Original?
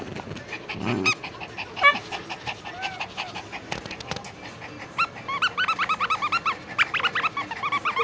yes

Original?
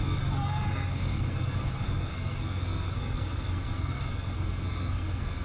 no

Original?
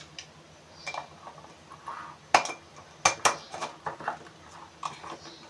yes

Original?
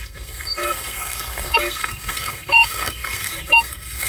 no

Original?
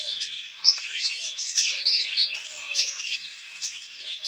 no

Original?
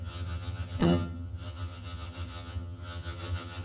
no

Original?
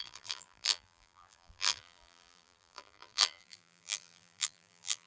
no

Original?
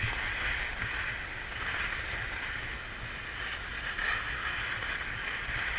yes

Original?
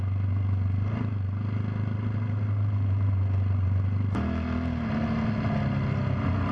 yes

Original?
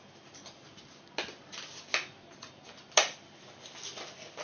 yes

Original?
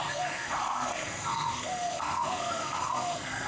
no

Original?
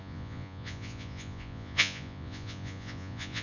no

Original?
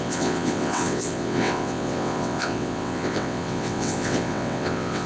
no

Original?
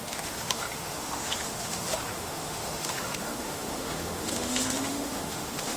no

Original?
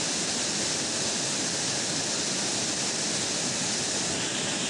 yes